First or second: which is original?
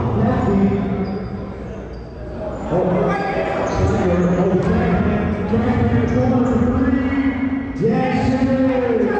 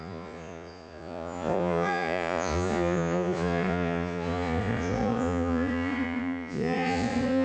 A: first